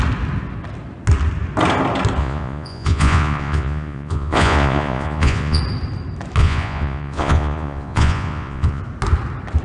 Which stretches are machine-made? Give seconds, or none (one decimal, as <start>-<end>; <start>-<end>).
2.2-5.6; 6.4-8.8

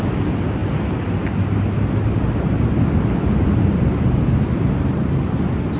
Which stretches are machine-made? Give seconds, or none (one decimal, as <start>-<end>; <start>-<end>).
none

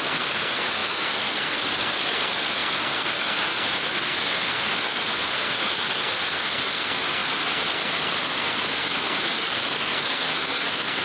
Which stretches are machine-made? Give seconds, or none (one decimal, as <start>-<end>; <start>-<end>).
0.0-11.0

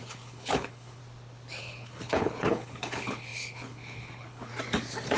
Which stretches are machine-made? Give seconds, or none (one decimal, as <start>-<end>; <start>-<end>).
0.0-1.0; 1.6-4.5